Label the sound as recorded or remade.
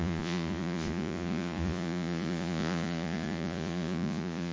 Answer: remade